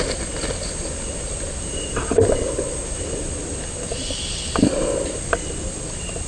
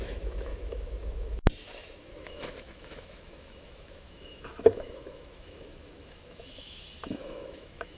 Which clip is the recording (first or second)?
first